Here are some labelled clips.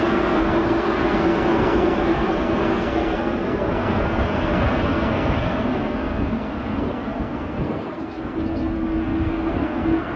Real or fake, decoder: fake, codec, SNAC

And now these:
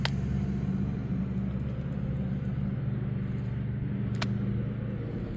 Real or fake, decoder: real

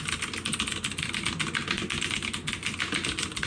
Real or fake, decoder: real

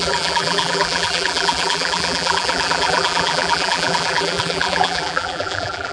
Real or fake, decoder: fake, vocoder, BigVGAN v2